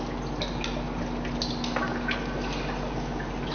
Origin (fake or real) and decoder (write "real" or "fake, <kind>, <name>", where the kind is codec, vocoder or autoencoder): real